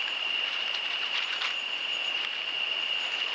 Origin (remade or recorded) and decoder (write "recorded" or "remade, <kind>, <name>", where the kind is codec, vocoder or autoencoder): remade, vocoder, BigVGAN v2